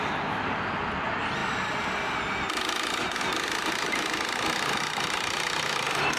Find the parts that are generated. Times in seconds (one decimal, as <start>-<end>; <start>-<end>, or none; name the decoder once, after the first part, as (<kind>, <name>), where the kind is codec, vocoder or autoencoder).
none